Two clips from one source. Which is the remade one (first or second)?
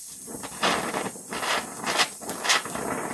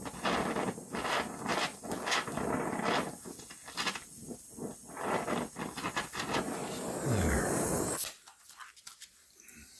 first